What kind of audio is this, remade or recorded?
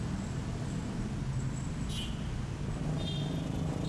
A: recorded